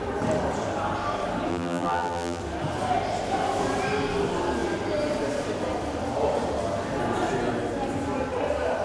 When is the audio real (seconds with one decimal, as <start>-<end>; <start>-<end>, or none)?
0.0-1.5; 2.4-8.8